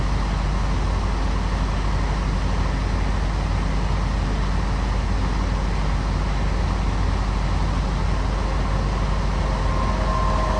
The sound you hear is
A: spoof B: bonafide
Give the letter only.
B